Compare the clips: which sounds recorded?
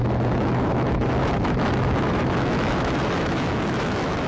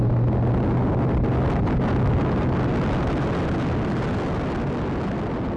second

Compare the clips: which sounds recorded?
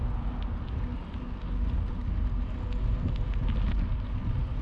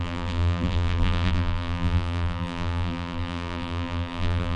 first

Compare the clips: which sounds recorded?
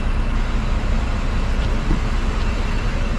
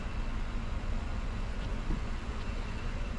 first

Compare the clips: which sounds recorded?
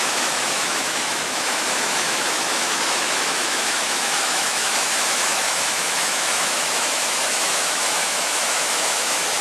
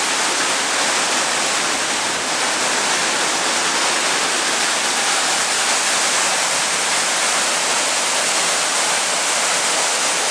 second